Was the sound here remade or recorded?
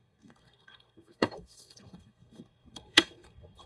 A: remade